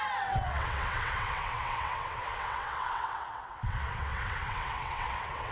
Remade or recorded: remade